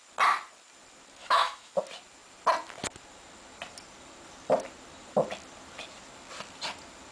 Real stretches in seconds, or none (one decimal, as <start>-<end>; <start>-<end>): 0.0-1.2; 1.7-7.1